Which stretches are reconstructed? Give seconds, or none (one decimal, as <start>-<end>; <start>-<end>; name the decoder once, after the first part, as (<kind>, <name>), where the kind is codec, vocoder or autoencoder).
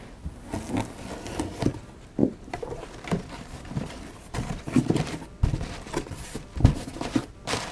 2.2-5.9 (vocoder, BigVGAN v2); 6.9-7.7